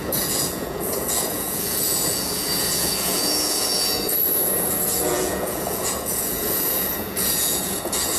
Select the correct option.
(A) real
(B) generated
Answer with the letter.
B